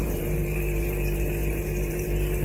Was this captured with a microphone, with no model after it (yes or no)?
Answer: no